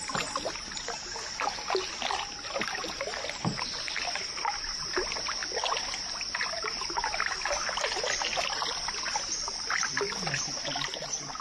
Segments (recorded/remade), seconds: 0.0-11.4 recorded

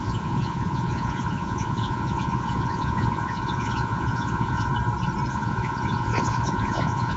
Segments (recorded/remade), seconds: 0.0-4.7 remade; 4.7-5.3 recorded; 5.3-7.2 remade

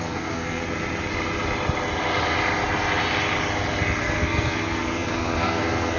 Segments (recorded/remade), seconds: 0.0-0.6 remade; 0.6-4.0 recorded; 4.0-6.0 remade

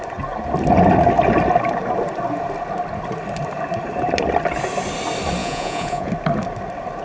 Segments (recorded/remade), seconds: 0.0-5.4 recorded; 5.4-6.1 remade; 6.1-7.0 recorded